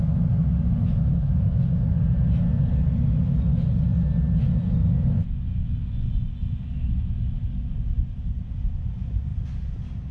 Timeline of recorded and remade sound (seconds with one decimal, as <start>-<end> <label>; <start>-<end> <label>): 0.0-1.1 recorded; 1.1-1.6 remade; 1.6-10.1 recorded